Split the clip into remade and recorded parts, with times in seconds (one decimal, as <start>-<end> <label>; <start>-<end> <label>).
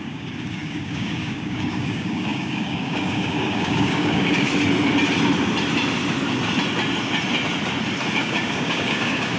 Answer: 0.0-4.5 remade; 4.5-8.2 recorded; 8.2-9.4 remade